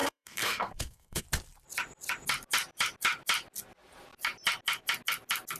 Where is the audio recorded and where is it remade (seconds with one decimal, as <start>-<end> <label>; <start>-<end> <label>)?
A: 0.0-1.2 remade; 1.2-5.6 recorded